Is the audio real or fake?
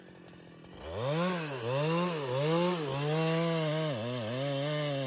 real